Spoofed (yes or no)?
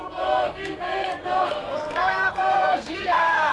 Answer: yes